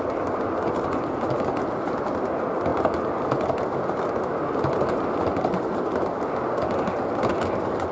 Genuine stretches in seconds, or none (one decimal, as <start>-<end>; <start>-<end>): 0.0-7.9